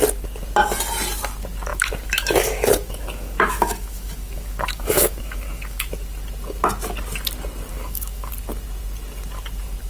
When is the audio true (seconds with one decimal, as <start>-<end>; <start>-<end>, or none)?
0.0-1.7; 5.9-7.7; 8.3-9.9